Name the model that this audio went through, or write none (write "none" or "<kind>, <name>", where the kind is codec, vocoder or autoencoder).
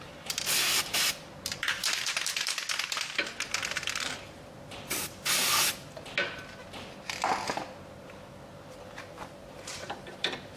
vocoder, BigVGAN v2